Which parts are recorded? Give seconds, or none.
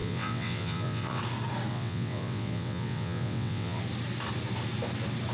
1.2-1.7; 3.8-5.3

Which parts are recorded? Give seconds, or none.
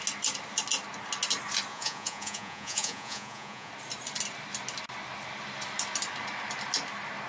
0.0-1.7; 3.7-7.3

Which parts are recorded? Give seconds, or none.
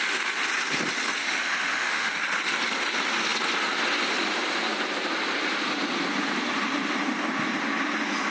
0.0-1.2; 2.2-8.3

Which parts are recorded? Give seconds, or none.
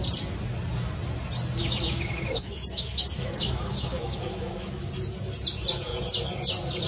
0.0-1.6; 4.9-6.9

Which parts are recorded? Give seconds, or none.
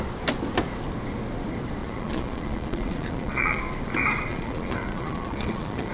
0.0-1.8; 3.6-4.3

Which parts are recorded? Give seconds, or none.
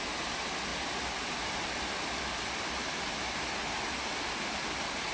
0.0-5.1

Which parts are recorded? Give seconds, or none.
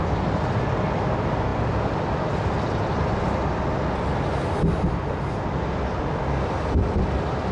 0.0-7.5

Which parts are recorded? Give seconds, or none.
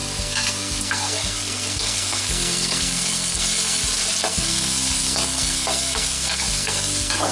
3.8-4.3